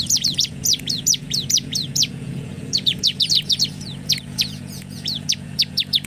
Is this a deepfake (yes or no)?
yes